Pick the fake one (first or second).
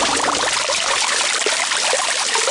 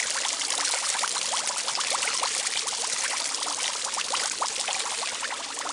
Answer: first